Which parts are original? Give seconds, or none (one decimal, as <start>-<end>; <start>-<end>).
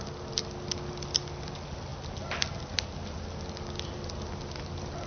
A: 0.0-5.1